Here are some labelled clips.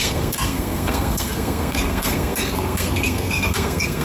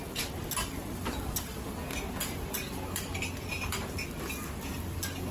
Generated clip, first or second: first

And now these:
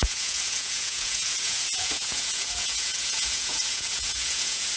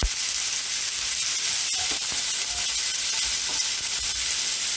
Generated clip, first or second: first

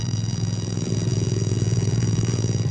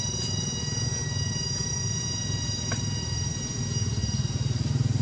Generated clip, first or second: first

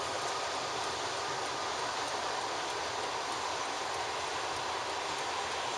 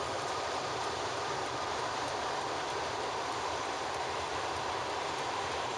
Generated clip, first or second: second